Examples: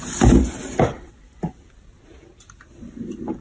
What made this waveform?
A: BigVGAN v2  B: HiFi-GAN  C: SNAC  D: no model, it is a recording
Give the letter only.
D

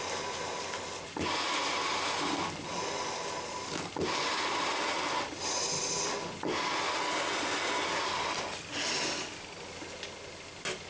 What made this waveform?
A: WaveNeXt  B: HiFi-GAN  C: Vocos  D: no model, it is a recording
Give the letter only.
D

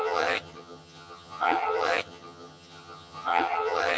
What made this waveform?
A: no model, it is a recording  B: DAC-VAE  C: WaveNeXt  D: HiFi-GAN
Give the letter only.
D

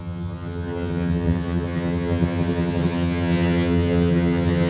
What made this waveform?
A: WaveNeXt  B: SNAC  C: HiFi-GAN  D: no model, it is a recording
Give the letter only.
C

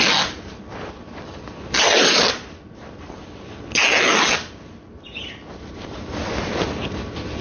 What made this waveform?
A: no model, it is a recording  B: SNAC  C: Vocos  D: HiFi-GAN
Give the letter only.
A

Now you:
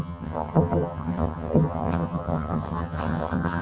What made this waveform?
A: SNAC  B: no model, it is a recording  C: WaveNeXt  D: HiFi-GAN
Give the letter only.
D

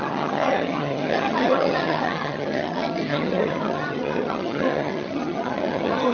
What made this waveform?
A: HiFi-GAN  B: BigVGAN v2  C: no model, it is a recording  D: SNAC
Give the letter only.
A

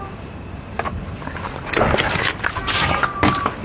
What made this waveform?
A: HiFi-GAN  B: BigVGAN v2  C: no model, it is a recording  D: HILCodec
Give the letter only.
C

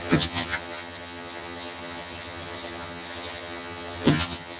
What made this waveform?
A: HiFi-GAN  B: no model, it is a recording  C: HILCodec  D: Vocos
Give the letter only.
A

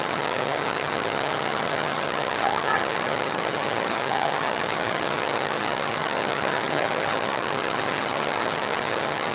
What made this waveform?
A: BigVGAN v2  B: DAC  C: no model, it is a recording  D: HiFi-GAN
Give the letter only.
D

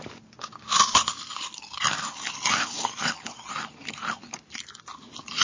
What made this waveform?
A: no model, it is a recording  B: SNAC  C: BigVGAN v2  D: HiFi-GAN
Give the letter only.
A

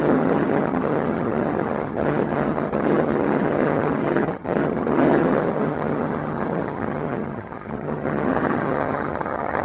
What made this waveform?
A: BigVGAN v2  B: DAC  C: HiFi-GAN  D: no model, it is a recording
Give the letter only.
C